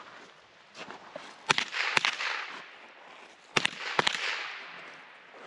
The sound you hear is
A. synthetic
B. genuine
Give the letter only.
B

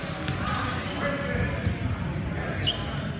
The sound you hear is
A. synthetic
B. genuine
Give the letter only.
B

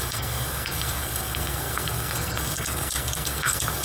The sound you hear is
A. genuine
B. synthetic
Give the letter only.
B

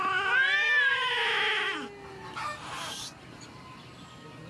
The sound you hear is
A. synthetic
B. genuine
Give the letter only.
B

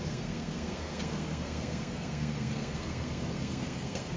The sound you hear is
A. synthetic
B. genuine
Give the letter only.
A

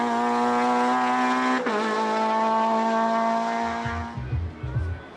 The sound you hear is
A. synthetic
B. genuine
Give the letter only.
B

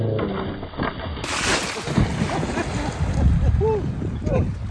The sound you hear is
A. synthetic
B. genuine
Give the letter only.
B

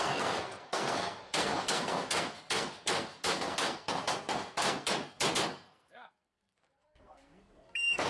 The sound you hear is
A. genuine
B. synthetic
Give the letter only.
B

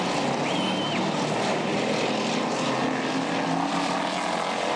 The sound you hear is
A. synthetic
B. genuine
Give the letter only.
B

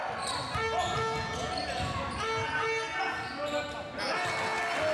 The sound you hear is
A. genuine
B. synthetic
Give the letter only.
A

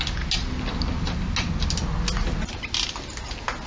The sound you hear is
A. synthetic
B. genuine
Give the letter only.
B